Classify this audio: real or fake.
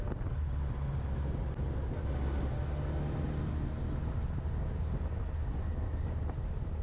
real